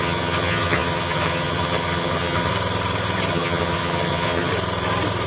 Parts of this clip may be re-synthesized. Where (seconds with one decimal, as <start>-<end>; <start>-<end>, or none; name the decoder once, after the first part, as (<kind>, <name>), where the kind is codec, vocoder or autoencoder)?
0.0-2.5 (vocoder, HiFi-GAN); 3.3-4.5

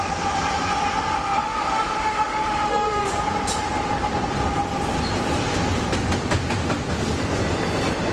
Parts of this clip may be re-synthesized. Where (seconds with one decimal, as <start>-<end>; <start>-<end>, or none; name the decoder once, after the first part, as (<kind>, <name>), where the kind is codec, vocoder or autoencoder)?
1.1-3.1 (autoencoder, DAC-VAE)

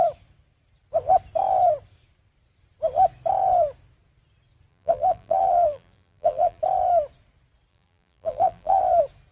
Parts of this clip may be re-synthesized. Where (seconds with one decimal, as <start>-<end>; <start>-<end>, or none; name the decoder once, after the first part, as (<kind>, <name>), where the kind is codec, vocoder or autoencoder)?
4.7-6.6 (vocoder, BigVGAN v2); 7.7-8.8